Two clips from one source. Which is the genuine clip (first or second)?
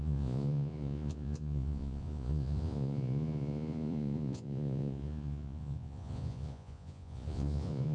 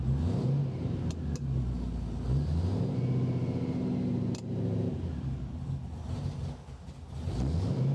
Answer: second